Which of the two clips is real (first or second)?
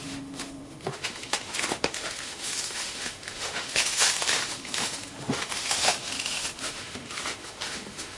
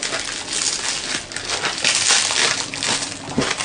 second